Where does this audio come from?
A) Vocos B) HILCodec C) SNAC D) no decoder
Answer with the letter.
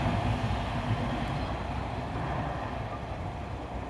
D